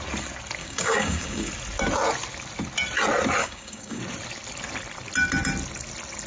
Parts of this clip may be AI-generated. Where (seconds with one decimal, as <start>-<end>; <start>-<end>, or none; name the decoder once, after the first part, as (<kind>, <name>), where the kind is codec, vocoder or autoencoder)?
0.6-1.5 (codec, DAC); 3.4-4.0